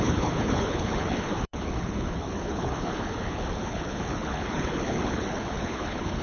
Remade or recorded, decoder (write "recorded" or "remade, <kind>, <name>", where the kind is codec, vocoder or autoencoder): remade, codec, HILCodec